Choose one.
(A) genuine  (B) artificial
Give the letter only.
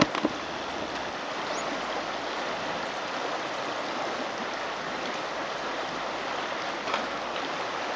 A